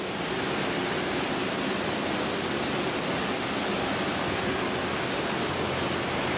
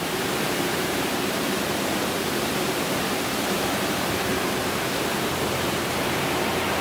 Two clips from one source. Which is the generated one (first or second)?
second